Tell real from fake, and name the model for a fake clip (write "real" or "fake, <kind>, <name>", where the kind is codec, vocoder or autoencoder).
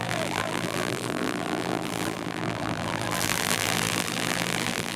fake, vocoder, BigVGAN v2